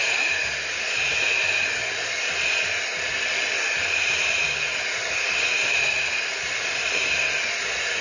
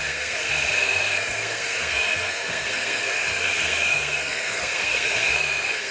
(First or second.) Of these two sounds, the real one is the first